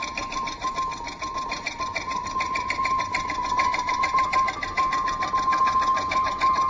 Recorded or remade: remade